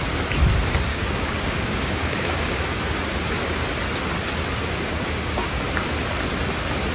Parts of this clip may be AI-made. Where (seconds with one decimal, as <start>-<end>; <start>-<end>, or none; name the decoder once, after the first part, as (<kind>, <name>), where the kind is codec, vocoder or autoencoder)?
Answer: 0.9-2.6 (codec, DAC); 4.9-5.6